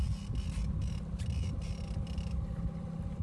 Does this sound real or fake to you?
real